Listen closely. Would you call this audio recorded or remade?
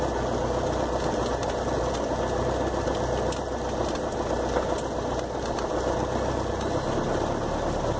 recorded